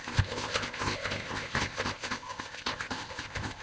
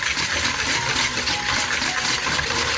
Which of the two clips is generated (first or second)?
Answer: first